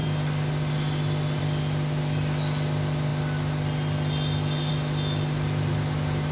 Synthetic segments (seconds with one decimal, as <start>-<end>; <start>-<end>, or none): none